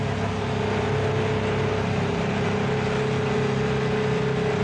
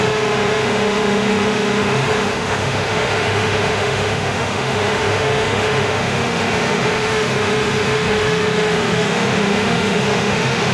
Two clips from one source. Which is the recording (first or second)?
first